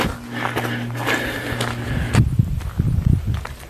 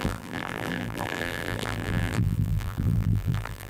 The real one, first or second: first